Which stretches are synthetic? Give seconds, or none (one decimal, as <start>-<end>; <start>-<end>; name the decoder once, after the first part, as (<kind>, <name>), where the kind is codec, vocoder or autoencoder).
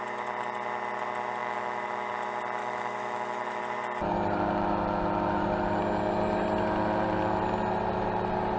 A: 1.4-2.1 (autoencoder, DAC-VAE); 2.6-3.6